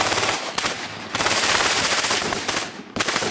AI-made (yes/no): yes